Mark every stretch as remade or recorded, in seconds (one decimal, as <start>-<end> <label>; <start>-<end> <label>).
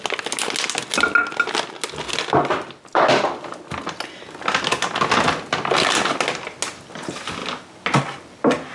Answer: 0.0-8.7 recorded